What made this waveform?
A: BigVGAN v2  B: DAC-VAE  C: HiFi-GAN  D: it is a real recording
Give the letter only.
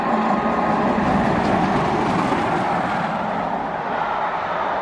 D